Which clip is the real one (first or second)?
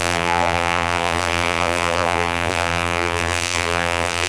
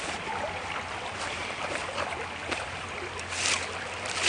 second